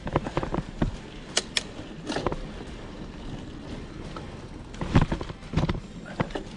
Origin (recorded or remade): recorded